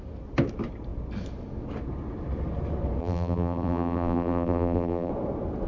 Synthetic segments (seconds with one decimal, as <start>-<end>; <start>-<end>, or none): 3.0-5.1